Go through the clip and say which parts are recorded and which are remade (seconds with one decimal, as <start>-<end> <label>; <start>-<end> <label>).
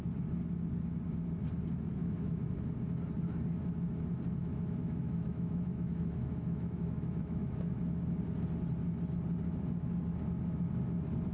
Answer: 0.0-2.0 recorded; 2.0-2.5 remade; 2.5-4.4 recorded; 4.4-7.8 remade; 7.8-11.3 recorded